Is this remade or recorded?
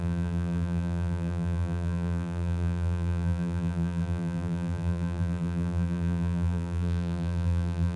remade